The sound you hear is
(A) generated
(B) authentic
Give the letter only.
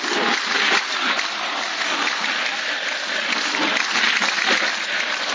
A